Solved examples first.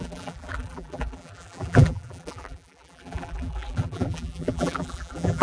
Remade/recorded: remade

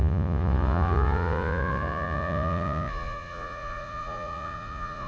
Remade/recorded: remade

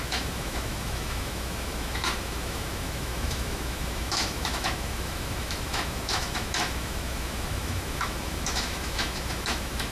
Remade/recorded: remade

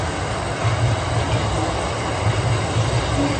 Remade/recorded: recorded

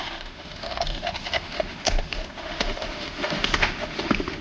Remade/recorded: remade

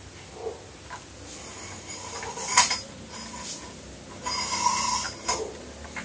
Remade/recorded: recorded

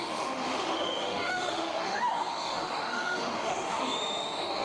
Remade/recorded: remade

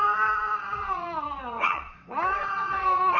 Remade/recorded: remade